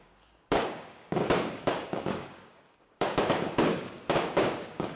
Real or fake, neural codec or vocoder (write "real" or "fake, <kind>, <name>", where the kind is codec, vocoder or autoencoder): fake, codec, DAC